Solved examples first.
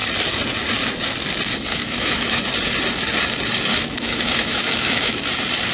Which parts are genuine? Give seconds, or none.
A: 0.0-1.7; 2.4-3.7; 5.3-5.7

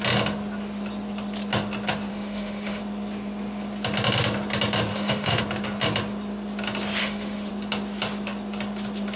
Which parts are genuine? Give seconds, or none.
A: 0.0-2.1; 2.8-4.9; 5.4-7.0; 7.5-9.2

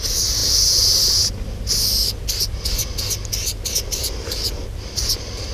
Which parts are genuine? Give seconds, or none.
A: 0.0-5.5

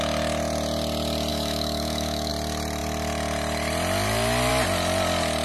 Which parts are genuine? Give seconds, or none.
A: 0.0-1.3; 2.3-5.4